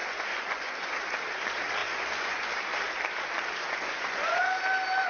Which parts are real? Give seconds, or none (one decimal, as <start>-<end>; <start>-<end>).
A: 0.9-1.8; 2.5-3.6; 4.6-5.1